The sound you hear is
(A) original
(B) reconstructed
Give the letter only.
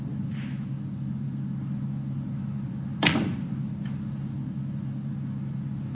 A